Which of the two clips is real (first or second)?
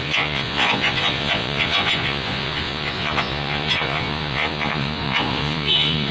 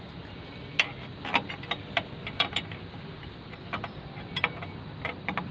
second